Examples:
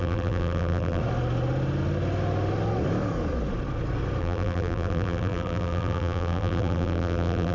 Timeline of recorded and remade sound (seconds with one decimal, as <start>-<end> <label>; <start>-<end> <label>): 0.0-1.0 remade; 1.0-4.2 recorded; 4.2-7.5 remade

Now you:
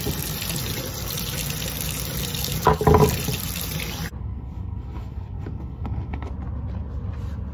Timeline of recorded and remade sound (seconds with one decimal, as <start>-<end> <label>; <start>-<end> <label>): 0.0-4.2 recorded; 4.2-6.3 remade; 6.3-7.5 recorded

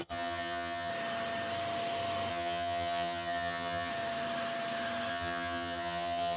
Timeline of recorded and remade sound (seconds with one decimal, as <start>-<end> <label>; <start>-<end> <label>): 0.0-0.9 remade; 0.9-2.3 recorded; 2.3-3.9 remade; 3.9-5.1 recorded; 5.1-6.4 remade

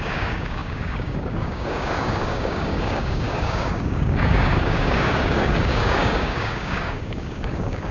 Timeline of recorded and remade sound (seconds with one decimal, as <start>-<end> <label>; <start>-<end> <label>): 0.0-7.9 remade

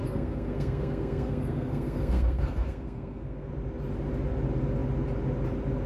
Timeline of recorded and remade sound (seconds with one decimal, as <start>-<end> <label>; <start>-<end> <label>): 0.0-3.5 remade; 3.5-5.9 recorded